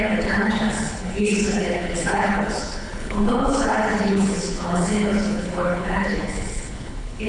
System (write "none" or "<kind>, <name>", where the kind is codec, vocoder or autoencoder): codec, HILCodec